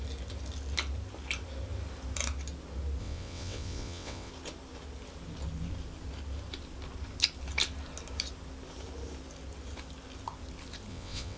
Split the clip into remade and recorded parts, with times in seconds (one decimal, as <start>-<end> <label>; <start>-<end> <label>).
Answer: 0.0-3.0 recorded; 3.0-4.3 remade; 4.3-10.9 recorded; 10.9-11.4 remade